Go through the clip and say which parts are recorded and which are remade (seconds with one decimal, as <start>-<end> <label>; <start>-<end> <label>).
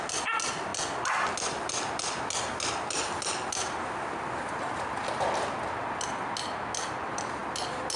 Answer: 0.0-8.0 recorded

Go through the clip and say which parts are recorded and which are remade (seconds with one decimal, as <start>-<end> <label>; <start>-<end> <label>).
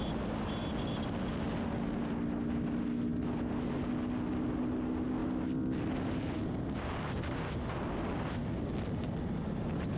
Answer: 0.0-10.0 recorded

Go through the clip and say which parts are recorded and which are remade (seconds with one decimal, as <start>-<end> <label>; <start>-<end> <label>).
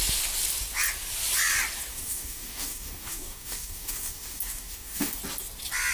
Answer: 0.0-1.9 recorded; 1.9-5.2 remade; 5.2-5.9 recorded